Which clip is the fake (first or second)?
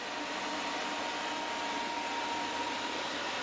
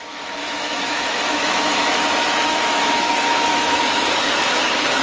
second